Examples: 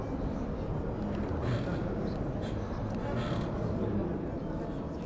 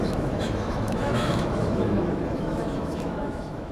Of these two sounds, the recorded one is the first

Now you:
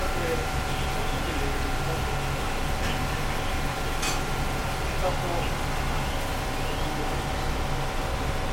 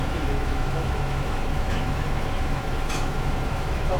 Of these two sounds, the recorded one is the first